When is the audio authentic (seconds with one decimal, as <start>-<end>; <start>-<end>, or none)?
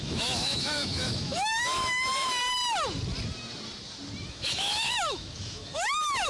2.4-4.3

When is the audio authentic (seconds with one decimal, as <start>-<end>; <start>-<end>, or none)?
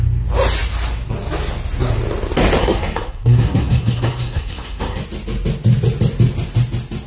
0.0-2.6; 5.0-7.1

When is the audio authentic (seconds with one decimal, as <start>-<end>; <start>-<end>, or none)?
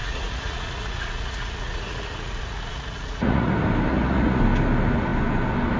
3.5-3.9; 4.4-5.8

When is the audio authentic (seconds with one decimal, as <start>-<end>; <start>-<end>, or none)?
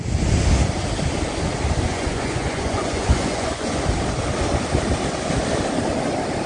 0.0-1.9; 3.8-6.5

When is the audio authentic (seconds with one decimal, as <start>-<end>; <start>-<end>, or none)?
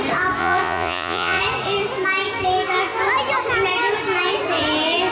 0.0-0.4; 1.4-5.1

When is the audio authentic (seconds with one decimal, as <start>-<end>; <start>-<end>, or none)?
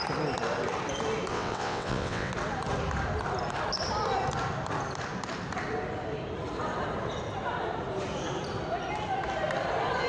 0.0-1.3; 2.3-10.1